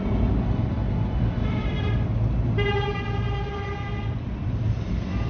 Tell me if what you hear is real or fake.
real